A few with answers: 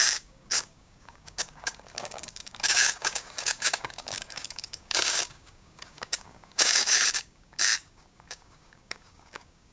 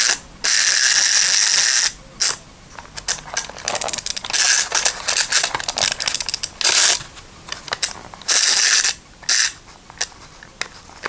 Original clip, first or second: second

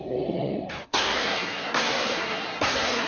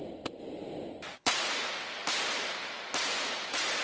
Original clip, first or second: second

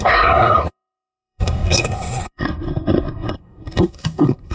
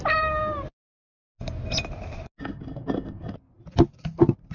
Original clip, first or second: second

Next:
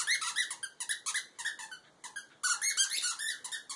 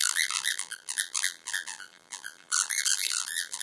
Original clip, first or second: first